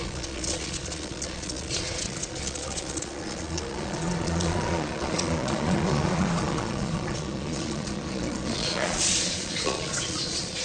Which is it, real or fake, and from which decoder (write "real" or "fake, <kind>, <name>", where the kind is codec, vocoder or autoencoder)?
fake, vocoder, Vocos